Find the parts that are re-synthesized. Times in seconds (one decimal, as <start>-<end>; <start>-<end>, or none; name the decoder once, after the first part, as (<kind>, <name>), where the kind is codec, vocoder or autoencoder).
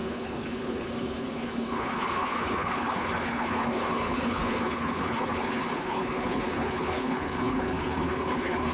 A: 0.0-8.7 (codec, HILCodec)